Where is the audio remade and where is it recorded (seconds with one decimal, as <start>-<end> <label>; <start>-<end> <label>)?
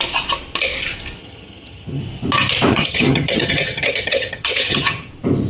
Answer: 0.0-1.2 recorded; 1.2-2.0 remade; 2.0-2.7 recorded; 2.7-5.1 remade; 5.1-5.5 recorded